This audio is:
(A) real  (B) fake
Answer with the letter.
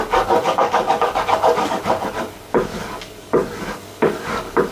B